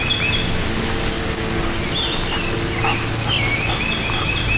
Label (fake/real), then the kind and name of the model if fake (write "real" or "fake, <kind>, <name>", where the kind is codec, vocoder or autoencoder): real